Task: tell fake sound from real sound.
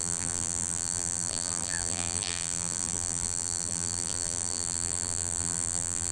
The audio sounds fake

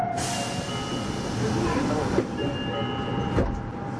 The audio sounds real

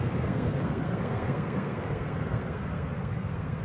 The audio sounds fake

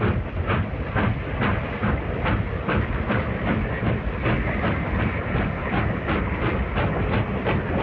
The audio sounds real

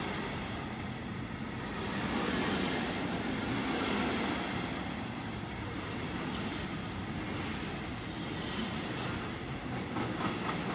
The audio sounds real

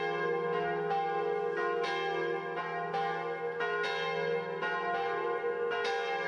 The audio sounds real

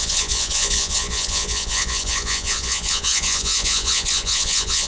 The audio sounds fake